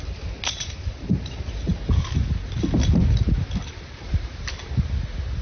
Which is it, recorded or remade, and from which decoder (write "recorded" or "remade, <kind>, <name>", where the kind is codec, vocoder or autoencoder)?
recorded